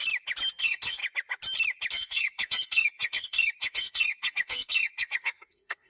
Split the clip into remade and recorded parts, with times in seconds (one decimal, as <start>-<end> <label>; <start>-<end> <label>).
0.0-0.6 recorded; 0.6-1.0 remade; 1.0-1.9 recorded; 1.9-5.9 remade